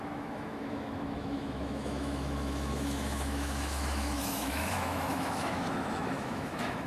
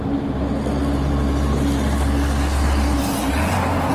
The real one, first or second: second